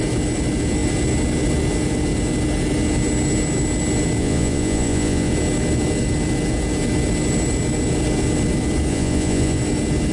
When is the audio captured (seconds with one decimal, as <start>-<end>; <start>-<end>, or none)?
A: 0.0-4.2; 5.3-8.9; 9.6-10.1